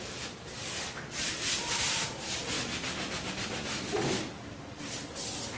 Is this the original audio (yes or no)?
yes